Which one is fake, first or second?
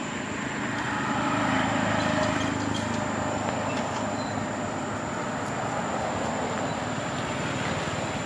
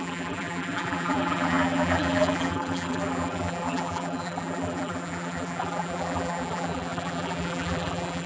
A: second